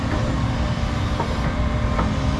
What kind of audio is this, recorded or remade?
recorded